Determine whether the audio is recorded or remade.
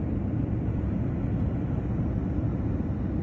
recorded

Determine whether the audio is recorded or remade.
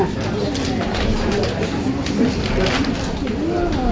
recorded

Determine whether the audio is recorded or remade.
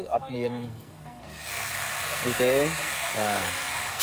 remade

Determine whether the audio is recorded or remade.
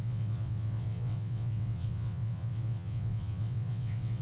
remade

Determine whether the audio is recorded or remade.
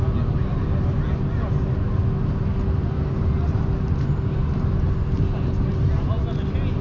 recorded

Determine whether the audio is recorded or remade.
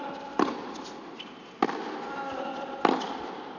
recorded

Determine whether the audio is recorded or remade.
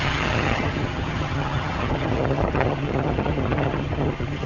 remade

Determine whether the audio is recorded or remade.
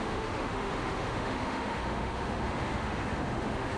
remade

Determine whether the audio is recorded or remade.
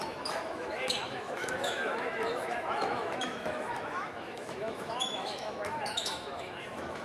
remade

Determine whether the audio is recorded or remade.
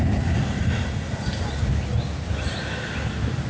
recorded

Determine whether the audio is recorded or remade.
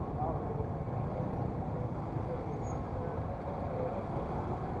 recorded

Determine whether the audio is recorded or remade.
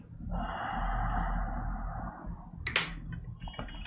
recorded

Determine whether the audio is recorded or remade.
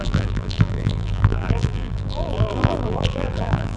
remade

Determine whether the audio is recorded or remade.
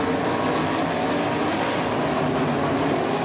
recorded